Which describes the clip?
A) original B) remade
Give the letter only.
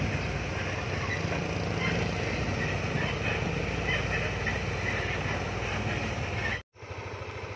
A